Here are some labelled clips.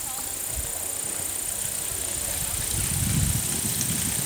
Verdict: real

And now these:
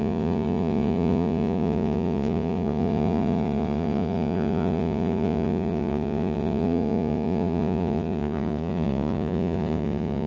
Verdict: fake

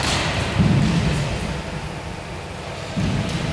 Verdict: real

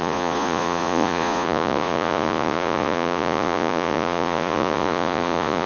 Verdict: fake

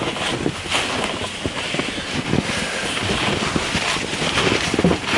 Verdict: real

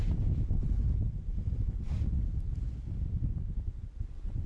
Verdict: real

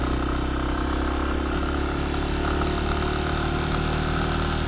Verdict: real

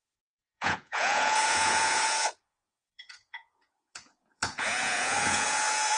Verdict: fake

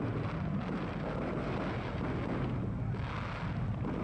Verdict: real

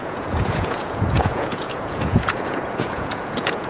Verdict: fake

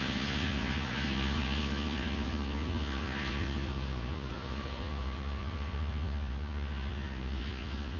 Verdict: fake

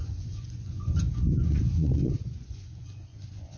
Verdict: fake